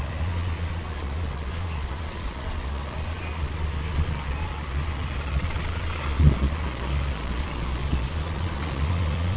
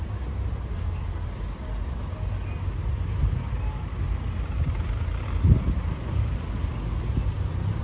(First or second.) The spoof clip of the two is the first